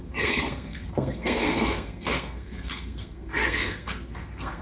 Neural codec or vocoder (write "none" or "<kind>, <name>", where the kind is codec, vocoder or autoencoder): codec, SNAC